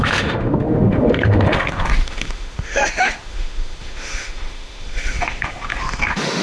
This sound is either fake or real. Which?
fake